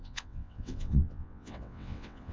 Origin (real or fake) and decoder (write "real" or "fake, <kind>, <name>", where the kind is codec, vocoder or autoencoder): fake, vocoder, WaveNeXt